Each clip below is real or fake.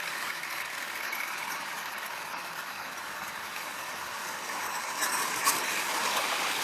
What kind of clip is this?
fake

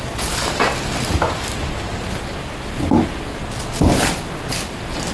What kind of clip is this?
real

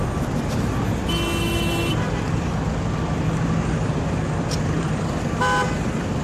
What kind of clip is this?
real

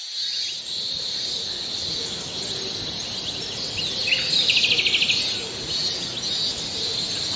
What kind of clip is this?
real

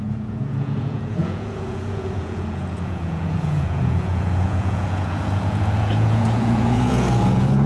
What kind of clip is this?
fake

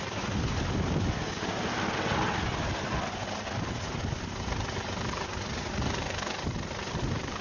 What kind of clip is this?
real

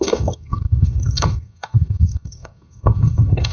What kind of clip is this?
fake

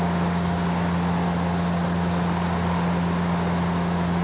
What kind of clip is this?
real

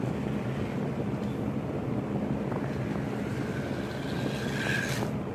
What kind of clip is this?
real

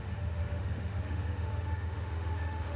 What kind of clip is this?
fake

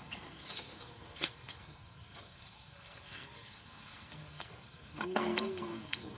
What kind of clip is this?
fake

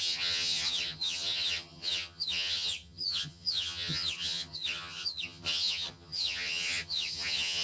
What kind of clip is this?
fake